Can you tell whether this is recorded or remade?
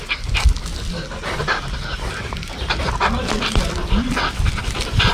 recorded